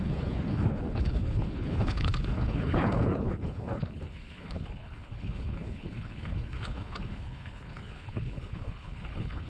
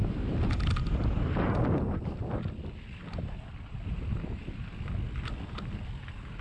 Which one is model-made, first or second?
first